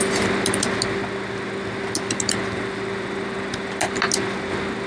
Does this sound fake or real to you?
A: real